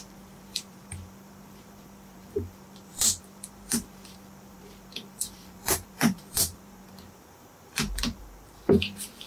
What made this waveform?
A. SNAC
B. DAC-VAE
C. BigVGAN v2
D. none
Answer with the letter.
C